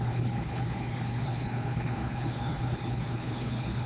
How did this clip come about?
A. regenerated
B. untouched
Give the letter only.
A